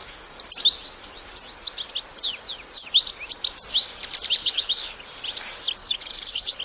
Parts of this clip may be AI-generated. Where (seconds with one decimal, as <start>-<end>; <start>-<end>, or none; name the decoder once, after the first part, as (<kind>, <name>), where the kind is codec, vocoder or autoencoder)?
4.4-5.0 (codec, HILCodec); 5.8-6.6

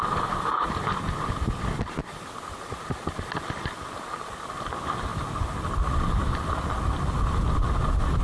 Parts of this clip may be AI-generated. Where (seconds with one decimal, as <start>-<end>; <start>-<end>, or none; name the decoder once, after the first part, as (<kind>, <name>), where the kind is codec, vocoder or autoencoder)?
none

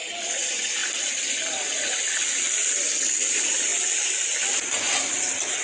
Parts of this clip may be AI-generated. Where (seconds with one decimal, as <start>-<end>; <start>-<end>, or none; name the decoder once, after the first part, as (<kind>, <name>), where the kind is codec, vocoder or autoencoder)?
none

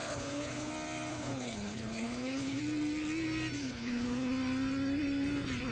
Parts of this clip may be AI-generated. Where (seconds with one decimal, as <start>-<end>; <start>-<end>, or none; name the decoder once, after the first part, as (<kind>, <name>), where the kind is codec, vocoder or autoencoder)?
0.0-0.7 (codec, HILCodec); 1.1-2.6; 3.6-4.3

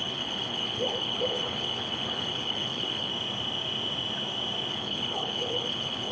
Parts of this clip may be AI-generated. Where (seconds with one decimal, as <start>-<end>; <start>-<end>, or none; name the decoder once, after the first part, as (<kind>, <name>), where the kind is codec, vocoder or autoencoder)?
0.0-3.1 (codec, HILCodec); 4.7-6.1

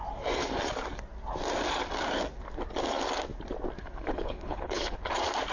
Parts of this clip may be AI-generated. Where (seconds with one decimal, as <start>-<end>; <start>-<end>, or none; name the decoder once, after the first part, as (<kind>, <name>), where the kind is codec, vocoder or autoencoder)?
3.8-5.0 (codec, HILCodec)